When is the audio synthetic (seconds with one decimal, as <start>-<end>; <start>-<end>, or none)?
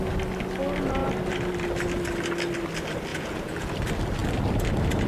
3.1-3.7